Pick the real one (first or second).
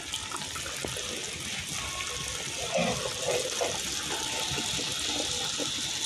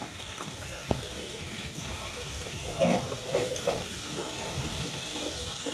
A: first